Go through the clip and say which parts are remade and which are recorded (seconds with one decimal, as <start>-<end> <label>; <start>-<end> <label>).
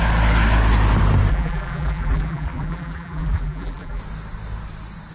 0.0-1.3 recorded; 1.3-4.0 remade; 4.0-5.1 recorded